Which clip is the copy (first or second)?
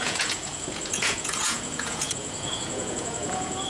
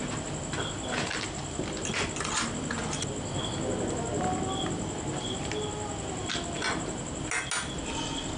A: first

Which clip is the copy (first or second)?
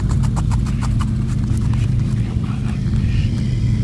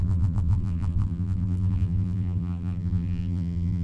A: second